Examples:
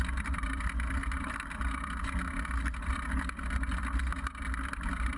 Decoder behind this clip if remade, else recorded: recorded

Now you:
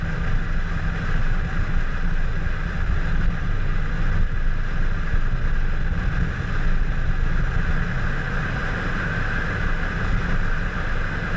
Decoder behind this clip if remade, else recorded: recorded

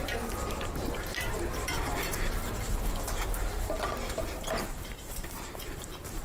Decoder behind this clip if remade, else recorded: remade, vocoder, BigVGAN v2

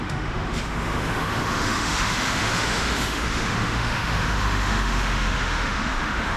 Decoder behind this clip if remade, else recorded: remade, autoencoder, DAC-VAE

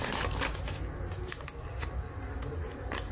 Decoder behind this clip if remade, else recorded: recorded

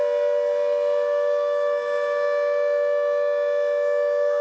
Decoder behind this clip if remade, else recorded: recorded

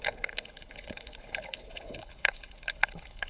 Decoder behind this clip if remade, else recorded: remade, codec, HILCodec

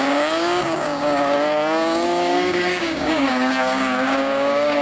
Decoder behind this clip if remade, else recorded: remade, codec, DAC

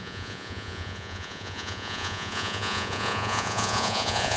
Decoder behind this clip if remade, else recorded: remade, vocoder, Vocos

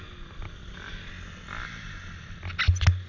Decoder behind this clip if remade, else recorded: recorded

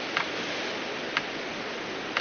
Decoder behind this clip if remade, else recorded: recorded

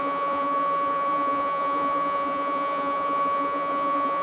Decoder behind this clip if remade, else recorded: remade, vocoder, Vocos